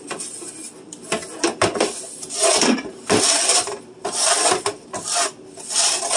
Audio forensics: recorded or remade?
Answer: recorded